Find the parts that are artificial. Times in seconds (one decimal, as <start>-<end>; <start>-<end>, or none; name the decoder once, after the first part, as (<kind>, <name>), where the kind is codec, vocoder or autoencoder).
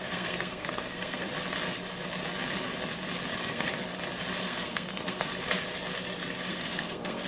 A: 0.0-1.3 (codec, SNAC); 3.3-3.7; 4.4-5.3; 6.5-7.3